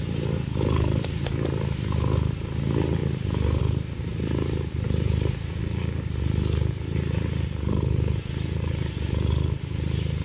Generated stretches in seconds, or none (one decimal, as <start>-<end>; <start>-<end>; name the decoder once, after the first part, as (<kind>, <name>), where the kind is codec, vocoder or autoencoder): none